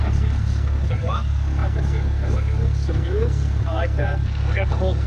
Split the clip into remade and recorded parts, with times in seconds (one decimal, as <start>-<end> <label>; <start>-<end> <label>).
0.0-5.1 remade

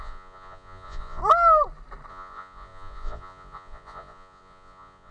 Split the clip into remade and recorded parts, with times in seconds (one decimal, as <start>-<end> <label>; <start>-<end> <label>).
0.0-1.2 remade; 1.2-2.1 recorded; 2.1-5.1 remade

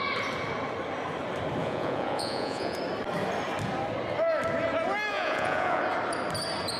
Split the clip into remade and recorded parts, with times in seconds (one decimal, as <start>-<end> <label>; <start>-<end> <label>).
0.0-1.6 recorded; 1.6-2.8 remade; 2.8-5.1 recorded; 5.1-5.8 remade; 5.8-6.8 recorded

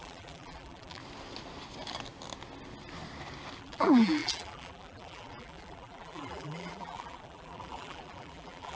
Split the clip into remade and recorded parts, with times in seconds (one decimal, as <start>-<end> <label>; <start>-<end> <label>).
0.0-1.0 remade; 1.0-3.6 recorded; 3.6-8.8 remade

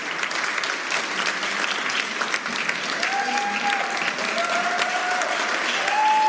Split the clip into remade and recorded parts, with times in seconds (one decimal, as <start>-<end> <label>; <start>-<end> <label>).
0.0-6.3 recorded